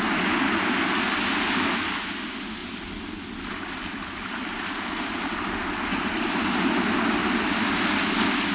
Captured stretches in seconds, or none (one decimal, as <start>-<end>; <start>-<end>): 0.0-2.6; 4.1-8.5